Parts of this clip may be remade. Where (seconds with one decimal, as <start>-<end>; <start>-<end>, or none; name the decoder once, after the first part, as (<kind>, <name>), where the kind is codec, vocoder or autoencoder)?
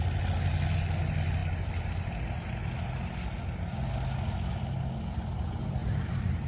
5.8-6.5 (vocoder, BigVGAN v2)